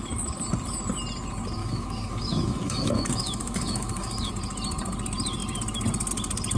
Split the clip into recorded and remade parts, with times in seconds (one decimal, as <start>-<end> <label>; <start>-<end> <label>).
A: 0.0-1.6 recorded; 1.6-4.3 remade; 4.3-6.6 recorded

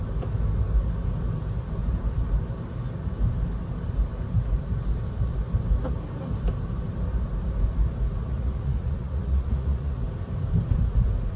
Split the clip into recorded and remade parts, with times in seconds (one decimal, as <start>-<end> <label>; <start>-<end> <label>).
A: 0.0-8.2 recorded; 8.2-10.0 remade; 10.0-11.4 recorded